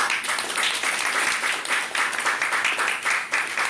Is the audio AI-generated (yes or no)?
no